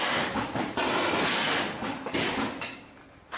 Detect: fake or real real